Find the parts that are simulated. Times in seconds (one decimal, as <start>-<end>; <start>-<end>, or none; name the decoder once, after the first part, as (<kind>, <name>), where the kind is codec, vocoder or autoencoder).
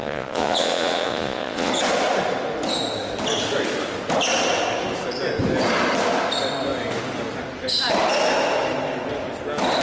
0.0-1.7 (vocoder, Vocos)